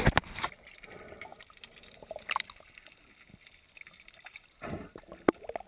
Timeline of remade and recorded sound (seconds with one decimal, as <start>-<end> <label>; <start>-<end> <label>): 0.0-5.7 recorded